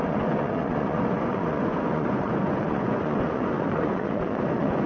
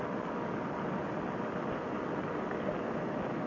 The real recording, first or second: second